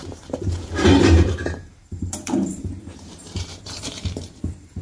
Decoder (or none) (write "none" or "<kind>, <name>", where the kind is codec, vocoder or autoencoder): vocoder, BigVGAN v2